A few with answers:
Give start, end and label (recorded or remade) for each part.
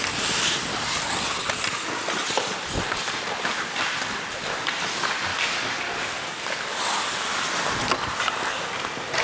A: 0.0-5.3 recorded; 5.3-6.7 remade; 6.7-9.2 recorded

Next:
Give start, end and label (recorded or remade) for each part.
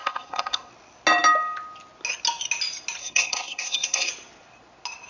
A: 0.0-0.7 remade; 0.7-3.0 recorded; 3.0-4.1 remade; 4.1-5.1 recorded